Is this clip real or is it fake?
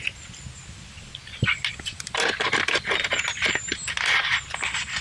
real